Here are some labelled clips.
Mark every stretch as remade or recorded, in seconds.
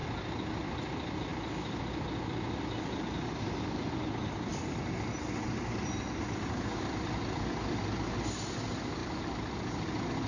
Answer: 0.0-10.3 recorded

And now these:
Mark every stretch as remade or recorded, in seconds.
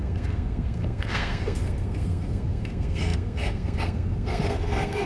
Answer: 0.0-5.1 remade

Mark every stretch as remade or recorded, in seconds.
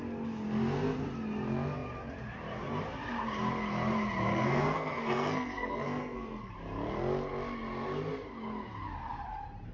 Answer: 0.0-4.3 recorded; 4.3-6.5 remade; 6.5-9.7 recorded